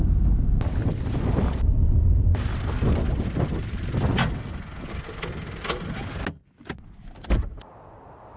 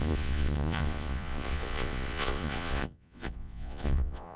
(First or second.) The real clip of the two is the first